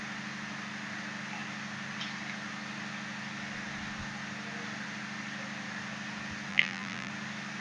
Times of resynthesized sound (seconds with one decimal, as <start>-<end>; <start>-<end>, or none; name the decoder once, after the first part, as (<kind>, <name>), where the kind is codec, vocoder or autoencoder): 6.5-7.1 (vocoder, BigVGAN v2)